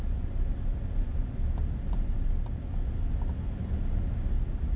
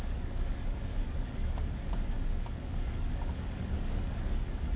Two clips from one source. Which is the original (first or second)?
first